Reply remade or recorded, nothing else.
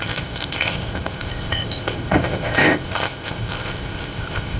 remade